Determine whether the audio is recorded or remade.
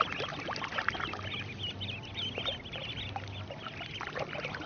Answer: recorded